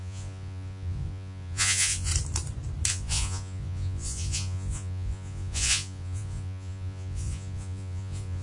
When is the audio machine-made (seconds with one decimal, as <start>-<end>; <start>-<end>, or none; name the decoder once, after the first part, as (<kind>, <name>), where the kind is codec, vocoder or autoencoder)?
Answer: 0.0-2.1 (vocoder, Vocos); 2.9-8.4